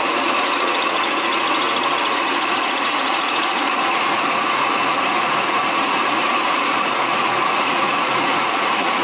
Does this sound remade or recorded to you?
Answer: remade